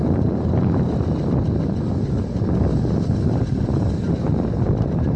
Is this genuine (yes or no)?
yes